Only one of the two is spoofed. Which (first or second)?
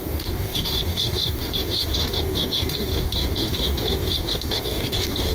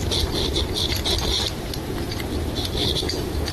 first